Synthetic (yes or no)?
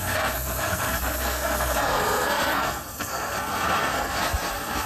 yes